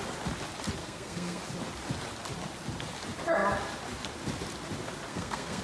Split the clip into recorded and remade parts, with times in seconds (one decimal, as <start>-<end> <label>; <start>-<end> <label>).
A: 0.0-0.8 recorded; 0.8-1.4 remade; 1.4-5.1 recorded; 5.1-5.6 remade